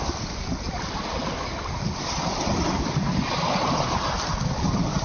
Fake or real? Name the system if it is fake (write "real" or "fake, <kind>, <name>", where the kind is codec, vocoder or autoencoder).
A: real